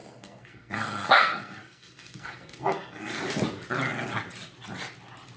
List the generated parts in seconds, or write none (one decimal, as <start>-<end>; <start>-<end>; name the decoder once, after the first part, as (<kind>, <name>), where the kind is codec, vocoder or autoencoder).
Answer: 0.0-3.2 (codec, SNAC)